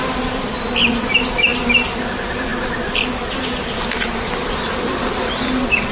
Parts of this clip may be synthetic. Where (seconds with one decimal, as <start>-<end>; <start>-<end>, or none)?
none